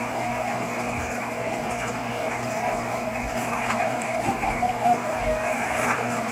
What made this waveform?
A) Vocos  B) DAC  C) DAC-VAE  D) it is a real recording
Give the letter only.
B